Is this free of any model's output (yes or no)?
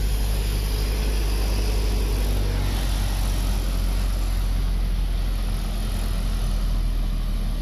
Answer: yes